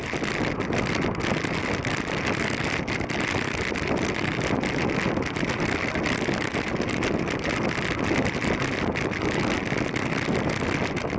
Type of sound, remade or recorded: recorded